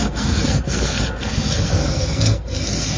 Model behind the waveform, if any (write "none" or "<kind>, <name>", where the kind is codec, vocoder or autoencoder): codec, SNAC